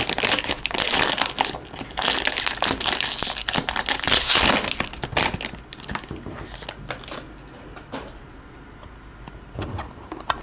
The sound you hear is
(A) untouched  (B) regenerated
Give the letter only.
A